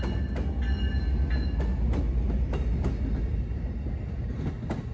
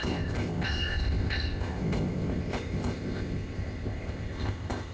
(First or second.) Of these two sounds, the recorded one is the first